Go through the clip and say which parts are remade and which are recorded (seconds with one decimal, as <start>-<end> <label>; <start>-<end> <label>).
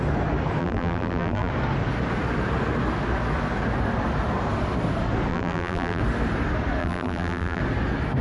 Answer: 0.0-0.6 recorded; 0.6-1.5 remade; 1.5-5.3 recorded; 5.3-6.0 remade; 6.0-6.8 recorded; 6.8-7.6 remade; 7.6-8.2 recorded